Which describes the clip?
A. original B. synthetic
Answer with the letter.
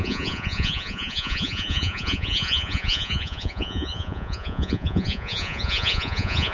B